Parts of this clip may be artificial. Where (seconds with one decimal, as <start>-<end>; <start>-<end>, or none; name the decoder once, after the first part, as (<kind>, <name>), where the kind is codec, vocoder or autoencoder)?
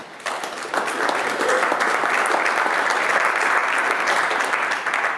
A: none